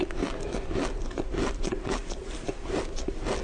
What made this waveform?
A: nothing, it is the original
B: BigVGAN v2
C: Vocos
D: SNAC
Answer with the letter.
A